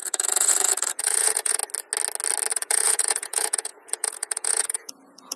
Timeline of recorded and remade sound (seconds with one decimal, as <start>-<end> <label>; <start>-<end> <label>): 0.0-1.6 remade; 1.6-2.5 recorded; 2.5-5.4 remade

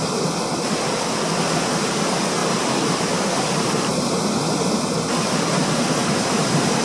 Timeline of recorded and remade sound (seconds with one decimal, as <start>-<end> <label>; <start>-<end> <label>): 0.0-2.4 recorded; 2.4-4.1 remade; 4.1-6.0 recorded; 6.0-6.8 remade

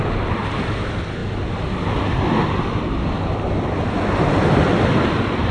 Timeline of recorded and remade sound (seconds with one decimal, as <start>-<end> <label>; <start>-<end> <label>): 0.0-5.5 recorded

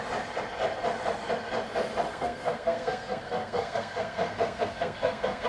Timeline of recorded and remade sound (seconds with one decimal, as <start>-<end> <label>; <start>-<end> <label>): 0.0-2.1 recorded; 2.1-5.5 remade

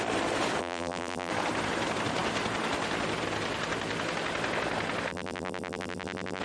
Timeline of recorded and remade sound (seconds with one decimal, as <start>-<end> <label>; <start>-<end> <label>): 0.0-0.6 recorded; 0.6-1.3 remade; 1.3-5.1 recorded; 5.1-6.4 remade

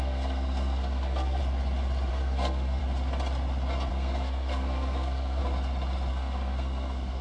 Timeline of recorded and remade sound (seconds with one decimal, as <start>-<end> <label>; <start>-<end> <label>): 0.0-1.4 remade; 1.4-2.1 recorded; 2.1-2.8 remade; 2.8-3.9 recorded; 3.9-5.4 remade; 5.4-6.1 recorded; 6.1-7.2 remade

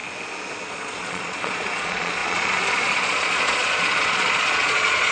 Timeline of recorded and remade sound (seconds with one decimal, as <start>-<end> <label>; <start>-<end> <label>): 0.0-0.7 recorded; 0.7-5.1 remade